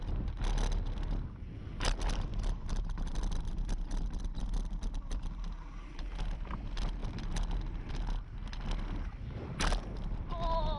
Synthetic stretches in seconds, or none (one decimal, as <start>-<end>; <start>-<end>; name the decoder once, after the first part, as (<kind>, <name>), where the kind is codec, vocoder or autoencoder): 2.3-4.2 (vocoder, BigVGAN v2)

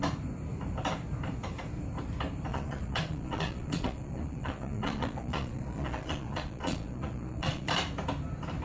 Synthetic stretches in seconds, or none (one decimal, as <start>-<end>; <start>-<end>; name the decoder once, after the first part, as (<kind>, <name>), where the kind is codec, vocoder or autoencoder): 2.5-7.7 (vocoder, Vocos)